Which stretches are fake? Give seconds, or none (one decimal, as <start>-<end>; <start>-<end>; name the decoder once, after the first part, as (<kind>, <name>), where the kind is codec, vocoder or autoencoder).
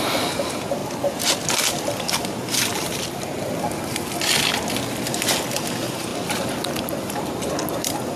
none